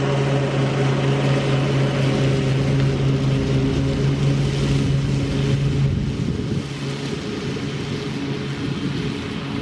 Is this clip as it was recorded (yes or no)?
yes